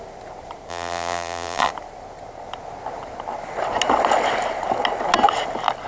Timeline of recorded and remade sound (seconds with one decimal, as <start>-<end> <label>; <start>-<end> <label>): 0.0-0.7 recorded; 0.7-1.7 remade; 1.7-5.9 recorded